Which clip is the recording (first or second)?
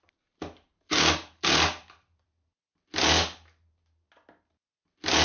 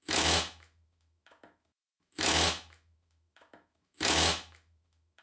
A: first